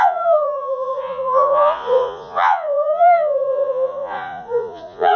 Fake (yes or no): yes